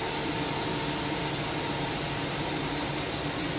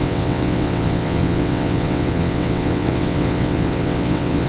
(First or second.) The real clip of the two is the first